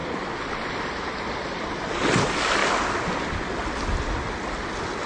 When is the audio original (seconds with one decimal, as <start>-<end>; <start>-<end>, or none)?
0.0-5.1